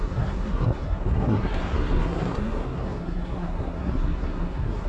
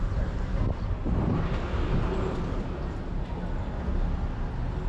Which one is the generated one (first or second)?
first